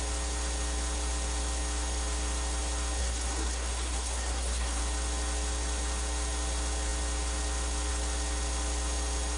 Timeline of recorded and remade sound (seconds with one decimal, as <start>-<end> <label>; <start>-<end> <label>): 0.0-3.0 recorded; 3.0-4.8 remade; 4.8-9.4 recorded